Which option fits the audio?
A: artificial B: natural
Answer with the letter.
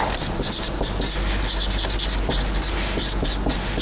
B